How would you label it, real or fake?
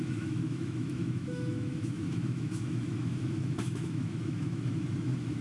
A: fake